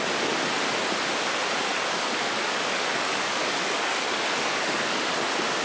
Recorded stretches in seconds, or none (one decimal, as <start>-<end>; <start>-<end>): 0.0-1.7; 5.1-5.6